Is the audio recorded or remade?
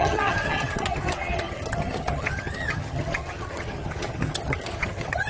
remade